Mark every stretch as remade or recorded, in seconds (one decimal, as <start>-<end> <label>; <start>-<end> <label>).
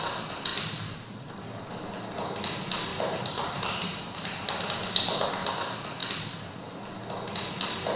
0.0-2.9 recorded; 2.9-4.6 remade; 4.6-8.0 recorded